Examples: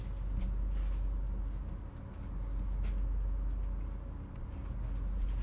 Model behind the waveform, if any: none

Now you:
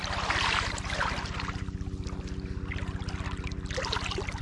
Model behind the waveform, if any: none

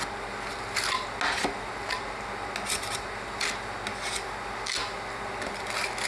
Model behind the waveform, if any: none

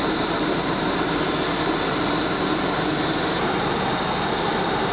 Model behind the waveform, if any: vocoder, BigVGAN v2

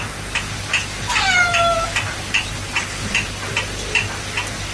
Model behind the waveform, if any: none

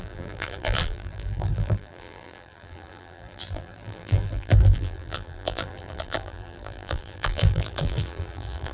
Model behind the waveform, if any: vocoder, BigVGAN v2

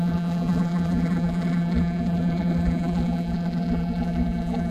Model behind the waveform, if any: vocoder, BigVGAN v2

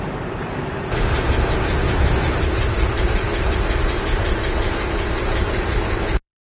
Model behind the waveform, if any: vocoder, BigVGAN v2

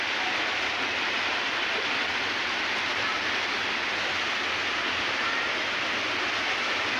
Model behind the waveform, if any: none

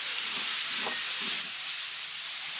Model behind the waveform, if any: vocoder, BigVGAN v2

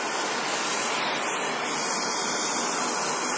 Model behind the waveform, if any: none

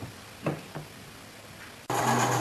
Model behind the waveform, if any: none